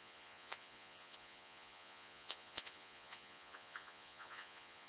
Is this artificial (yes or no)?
yes